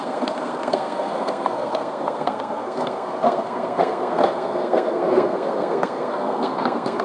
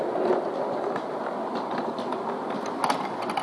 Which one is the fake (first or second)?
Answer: first